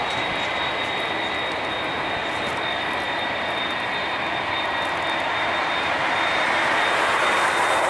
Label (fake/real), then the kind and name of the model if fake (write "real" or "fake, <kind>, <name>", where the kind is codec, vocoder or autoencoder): real